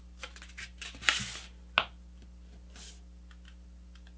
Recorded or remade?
recorded